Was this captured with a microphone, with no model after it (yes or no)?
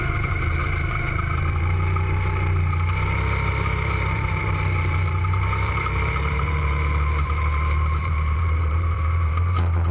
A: no